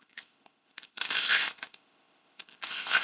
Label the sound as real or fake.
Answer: fake